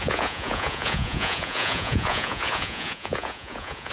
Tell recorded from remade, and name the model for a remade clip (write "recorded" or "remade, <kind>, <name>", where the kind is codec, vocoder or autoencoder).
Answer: remade, vocoder, Vocos